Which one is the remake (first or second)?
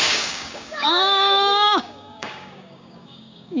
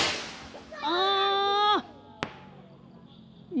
first